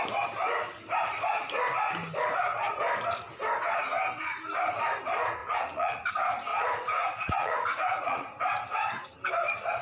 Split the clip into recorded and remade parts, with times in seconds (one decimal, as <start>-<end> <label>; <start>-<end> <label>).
0.0-5.4 recorded; 5.4-6.1 remade; 6.1-6.5 recorded; 6.5-8.4 remade; 8.4-9.8 recorded